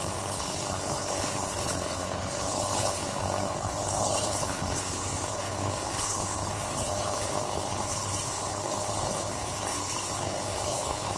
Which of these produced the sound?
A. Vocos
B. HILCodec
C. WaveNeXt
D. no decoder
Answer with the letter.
B